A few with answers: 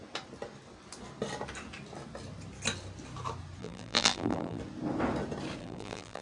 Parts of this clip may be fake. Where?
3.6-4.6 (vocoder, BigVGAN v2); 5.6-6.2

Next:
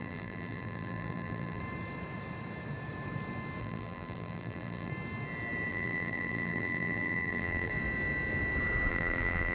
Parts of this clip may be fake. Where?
0.0-1.6 (vocoder, BigVGAN v2); 3.6-4.9; 5.7-7.7; 8.9-9.5

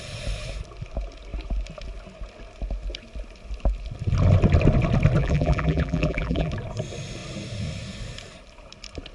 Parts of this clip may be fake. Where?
5.2-6.5 (vocoder, BigVGAN v2)

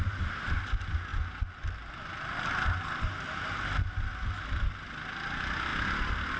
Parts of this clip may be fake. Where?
none

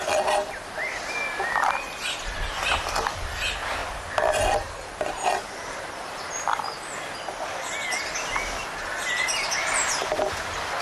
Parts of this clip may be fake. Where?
none

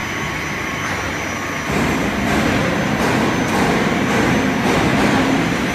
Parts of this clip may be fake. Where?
0.0-1.0 (vocoder, BigVGAN v2); 4.9-5.7

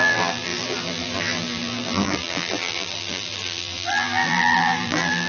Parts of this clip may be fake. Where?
0.0-5.3 (vocoder, BigVGAN v2)